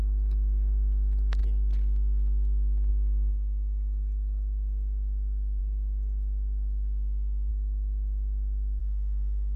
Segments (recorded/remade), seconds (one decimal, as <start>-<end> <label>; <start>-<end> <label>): 0.0-8.8 recorded; 8.8-9.6 remade